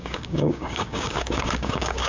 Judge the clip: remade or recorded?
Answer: remade